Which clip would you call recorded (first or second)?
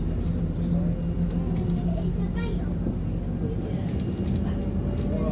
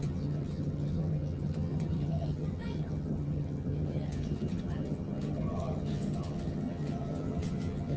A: first